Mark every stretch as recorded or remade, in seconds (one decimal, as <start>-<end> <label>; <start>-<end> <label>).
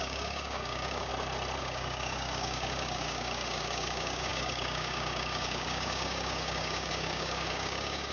0.0-1.1 remade; 1.1-1.6 recorded; 1.6-8.1 remade